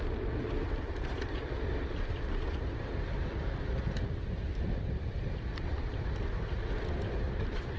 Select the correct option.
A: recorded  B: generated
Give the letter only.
B